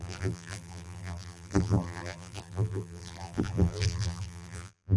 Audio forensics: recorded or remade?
remade